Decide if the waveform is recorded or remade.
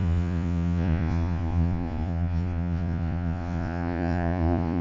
remade